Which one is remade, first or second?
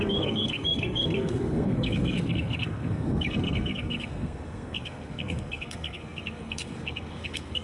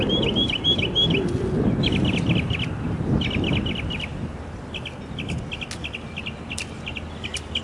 first